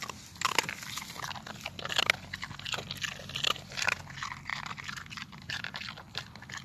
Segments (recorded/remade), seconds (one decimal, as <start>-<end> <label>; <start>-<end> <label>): 0.0-4.5 recorded; 4.5-5.8 remade; 5.8-6.6 recorded